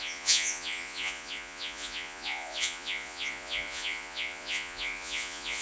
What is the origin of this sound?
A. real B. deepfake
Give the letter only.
B